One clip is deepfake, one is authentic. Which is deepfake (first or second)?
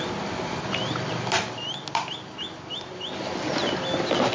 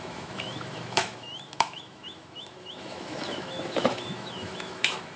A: second